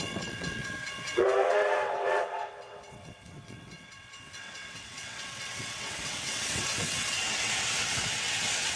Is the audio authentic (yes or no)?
no